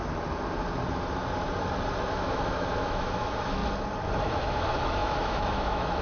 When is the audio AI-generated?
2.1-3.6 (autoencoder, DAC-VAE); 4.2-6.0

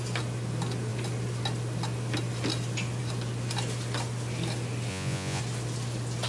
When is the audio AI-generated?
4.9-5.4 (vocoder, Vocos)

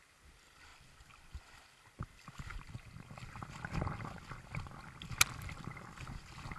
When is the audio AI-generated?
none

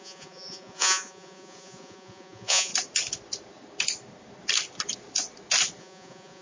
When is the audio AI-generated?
0.0-2.7 (vocoder, Vocos); 5.8-6.4

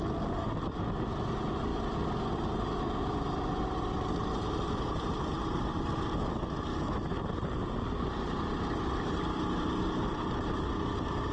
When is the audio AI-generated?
none